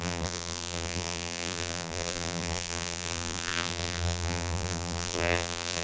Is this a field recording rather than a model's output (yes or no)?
no